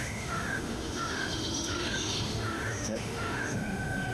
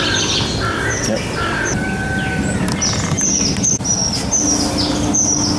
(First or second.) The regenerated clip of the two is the first